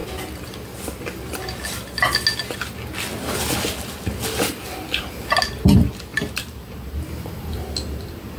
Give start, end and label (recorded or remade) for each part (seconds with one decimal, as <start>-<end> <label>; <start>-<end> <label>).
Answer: 0.0-6.1 recorded; 6.1-8.4 remade